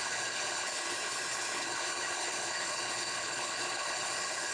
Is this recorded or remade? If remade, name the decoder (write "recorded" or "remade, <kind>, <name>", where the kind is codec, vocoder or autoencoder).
remade, codec, HILCodec